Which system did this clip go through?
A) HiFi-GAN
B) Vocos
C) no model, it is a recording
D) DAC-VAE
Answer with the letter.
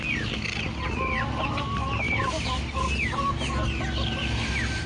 C